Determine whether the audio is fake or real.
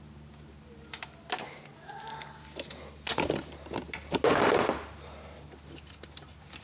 real